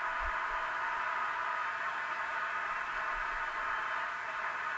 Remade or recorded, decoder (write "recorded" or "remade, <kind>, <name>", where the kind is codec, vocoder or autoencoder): recorded